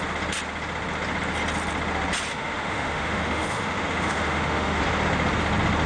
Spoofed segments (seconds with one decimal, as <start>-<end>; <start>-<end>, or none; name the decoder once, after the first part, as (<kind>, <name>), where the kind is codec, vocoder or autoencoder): 2.3-4.8 (autoencoder, DAC-VAE)